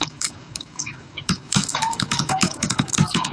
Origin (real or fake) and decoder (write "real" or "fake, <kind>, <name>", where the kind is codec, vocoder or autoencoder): fake, codec, DAC